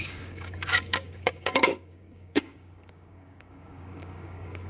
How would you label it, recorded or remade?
remade